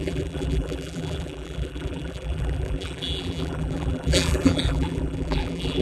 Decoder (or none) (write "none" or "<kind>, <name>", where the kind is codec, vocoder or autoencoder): vocoder, BigVGAN v2